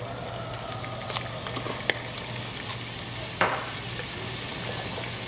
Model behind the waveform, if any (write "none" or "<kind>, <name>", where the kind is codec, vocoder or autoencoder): none